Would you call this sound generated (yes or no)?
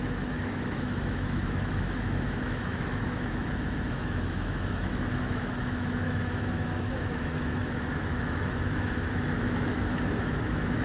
yes